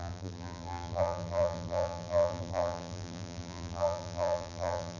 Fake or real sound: fake